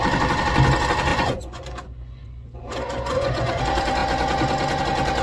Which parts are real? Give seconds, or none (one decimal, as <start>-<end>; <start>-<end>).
0.0-1.1; 3.6-5.2